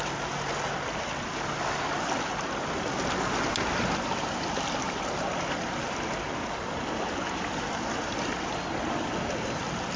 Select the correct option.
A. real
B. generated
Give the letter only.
A